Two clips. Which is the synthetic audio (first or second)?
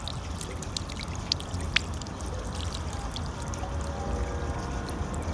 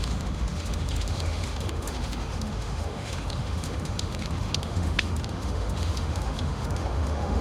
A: second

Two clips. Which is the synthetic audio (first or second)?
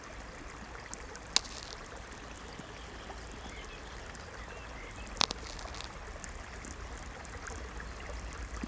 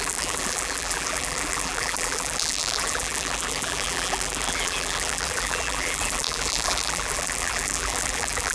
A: second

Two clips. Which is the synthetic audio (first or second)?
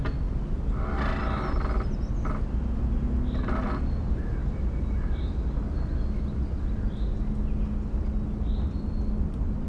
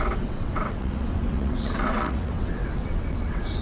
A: second